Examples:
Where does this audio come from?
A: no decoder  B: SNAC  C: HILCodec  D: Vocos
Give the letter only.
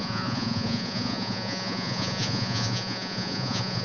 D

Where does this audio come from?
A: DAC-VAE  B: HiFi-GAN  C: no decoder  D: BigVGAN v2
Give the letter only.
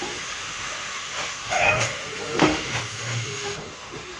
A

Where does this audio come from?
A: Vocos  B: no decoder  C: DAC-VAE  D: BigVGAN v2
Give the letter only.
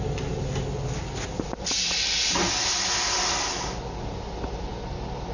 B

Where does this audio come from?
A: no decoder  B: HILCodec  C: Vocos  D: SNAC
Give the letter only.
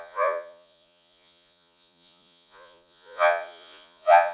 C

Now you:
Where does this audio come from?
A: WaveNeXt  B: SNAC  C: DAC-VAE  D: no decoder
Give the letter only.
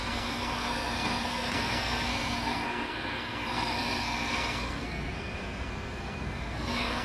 B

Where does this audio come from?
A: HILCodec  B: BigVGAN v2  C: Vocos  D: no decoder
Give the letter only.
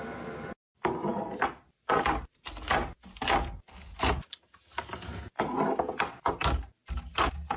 D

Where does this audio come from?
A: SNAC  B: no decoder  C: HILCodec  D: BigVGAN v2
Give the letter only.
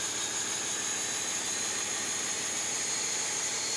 B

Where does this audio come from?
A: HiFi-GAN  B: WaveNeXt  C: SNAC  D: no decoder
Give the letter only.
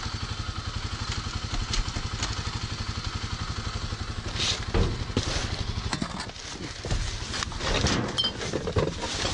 D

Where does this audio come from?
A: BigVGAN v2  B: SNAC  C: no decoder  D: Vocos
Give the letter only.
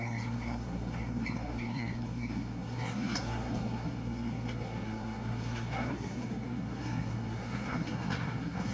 B